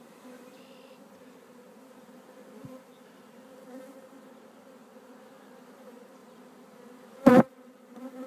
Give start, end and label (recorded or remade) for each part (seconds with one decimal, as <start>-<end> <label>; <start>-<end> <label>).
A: 0.0-6.2 remade; 6.2-7.3 recorded; 7.3-8.3 remade